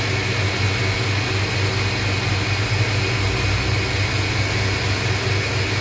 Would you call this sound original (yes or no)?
yes